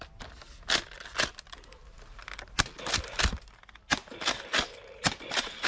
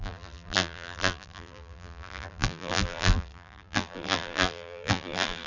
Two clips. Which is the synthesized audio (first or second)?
second